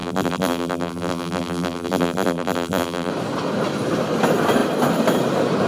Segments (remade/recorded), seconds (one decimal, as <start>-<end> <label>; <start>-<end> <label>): 0.0-3.1 remade; 3.1-5.7 recorded